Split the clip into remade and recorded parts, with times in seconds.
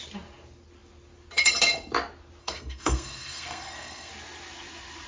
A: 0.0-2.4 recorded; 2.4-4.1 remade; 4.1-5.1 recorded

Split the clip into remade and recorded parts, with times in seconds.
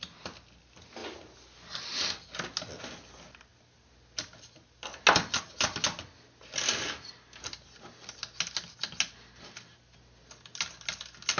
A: 0.0-11.4 recorded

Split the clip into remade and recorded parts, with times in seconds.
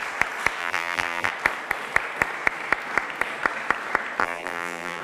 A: 0.0-0.6 recorded; 0.6-1.3 remade; 1.3-4.2 recorded; 4.2-5.0 remade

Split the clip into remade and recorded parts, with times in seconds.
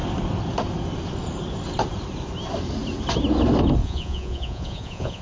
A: 0.0-3.8 recorded; 3.8-5.2 remade